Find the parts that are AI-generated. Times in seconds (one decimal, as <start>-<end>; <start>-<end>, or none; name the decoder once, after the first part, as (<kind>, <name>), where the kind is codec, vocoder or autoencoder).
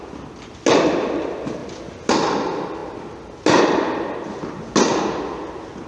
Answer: none